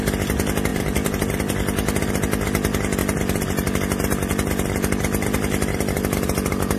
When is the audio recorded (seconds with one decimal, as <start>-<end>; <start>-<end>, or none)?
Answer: 0.0-0.7; 2.1-3.0; 6.0-6.8